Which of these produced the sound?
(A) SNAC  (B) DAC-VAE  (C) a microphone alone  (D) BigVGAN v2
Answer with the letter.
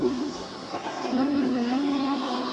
A